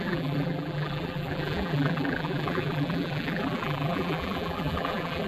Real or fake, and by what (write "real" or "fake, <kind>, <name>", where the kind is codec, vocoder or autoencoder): fake, vocoder, BigVGAN v2